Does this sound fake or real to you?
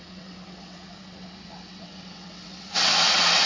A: fake